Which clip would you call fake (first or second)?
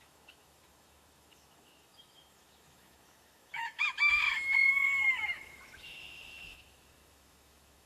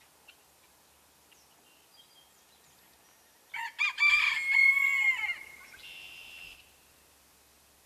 first